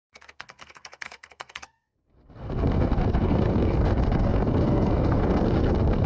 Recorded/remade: remade